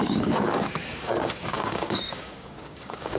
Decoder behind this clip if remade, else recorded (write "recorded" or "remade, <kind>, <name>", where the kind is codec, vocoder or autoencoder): remade, codec, DAC